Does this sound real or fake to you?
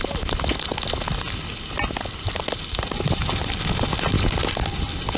real